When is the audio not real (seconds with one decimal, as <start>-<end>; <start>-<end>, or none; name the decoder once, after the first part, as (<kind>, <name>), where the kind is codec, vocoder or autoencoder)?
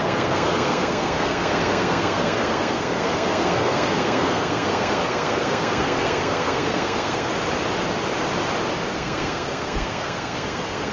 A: 0.0-7.3 (codec, SNAC); 8.9-10.9